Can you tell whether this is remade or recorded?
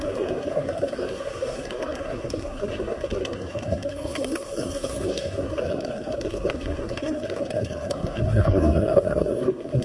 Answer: remade